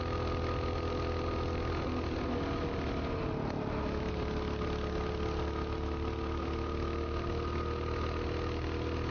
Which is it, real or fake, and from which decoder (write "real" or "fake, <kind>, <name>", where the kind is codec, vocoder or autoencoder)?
real